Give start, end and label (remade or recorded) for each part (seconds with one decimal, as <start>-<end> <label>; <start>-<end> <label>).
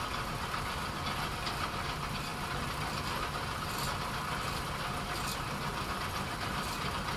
0.0-7.2 recorded